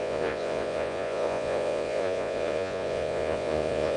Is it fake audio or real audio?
fake